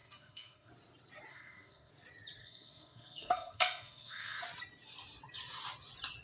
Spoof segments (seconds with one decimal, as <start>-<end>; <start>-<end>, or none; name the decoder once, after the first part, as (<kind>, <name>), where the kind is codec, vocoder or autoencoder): 0.0-0.7 (codec, SNAC); 1.3-1.9; 2.4-4.4